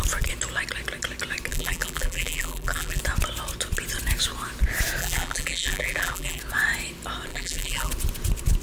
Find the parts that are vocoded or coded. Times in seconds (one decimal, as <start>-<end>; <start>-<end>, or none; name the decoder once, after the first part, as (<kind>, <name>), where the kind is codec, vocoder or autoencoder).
1.5-3.0 (vocoder, BigVGAN v2); 5.0-6.4; 7.3-7.9